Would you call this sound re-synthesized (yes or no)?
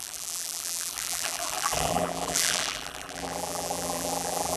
yes